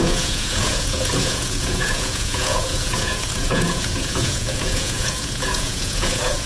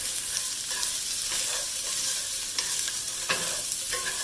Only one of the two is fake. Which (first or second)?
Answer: first